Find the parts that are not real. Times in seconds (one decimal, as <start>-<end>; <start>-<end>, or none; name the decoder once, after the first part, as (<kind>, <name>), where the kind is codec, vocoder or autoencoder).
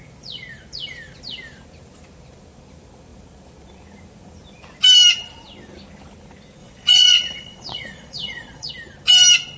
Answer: 6.6-8.7 (vocoder, Vocos)